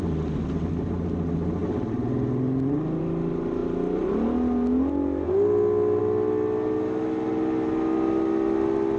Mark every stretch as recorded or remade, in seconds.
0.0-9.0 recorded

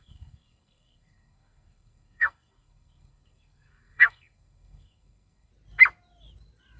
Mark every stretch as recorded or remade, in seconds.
0.0-5.5 remade; 5.5-6.8 recorded

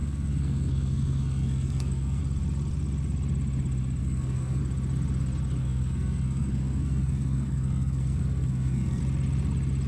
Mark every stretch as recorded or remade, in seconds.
0.0-2.2 remade; 2.2-4.0 recorded; 4.0-4.6 remade; 4.6-5.6 recorded; 5.6-9.0 remade; 9.0-9.9 recorded

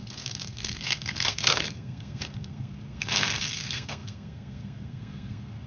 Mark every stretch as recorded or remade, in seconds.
0.0-5.7 remade

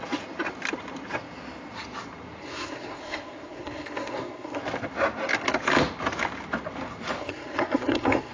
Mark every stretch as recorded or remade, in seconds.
0.0-2.4 recorded; 2.4-4.6 remade; 4.6-7.2 recorded; 7.2-8.3 remade

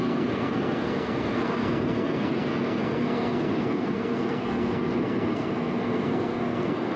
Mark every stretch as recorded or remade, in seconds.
0.0-7.0 remade

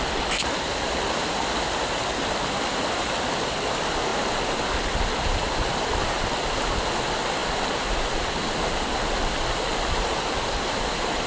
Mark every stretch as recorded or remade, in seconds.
0.0-11.3 recorded

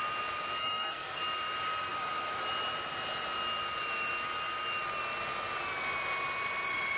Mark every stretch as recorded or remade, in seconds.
0.0-0.6 recorded; 0.6-1.2 remade; 1.2-7.0 recorded